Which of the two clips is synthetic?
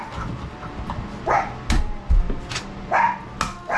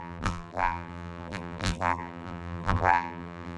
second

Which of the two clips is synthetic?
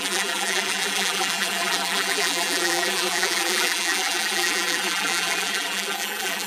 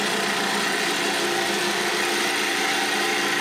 first